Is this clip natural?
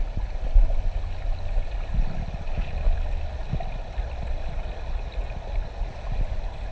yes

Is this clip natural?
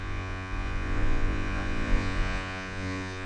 no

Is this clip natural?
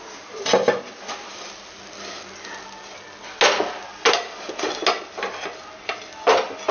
yes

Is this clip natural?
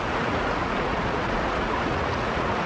no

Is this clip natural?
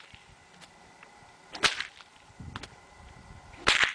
yes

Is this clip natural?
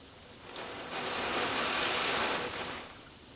yes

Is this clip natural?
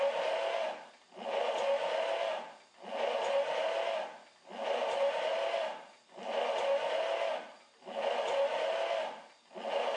yes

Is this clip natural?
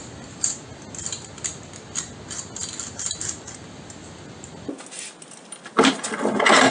yes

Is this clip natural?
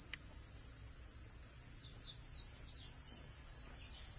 yes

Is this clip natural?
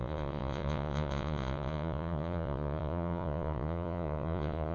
no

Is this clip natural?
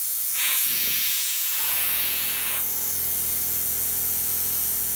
no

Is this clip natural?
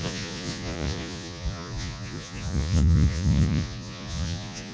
no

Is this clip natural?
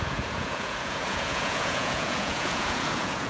no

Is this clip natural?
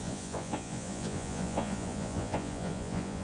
no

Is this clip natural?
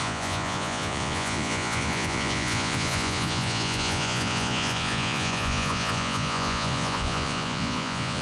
no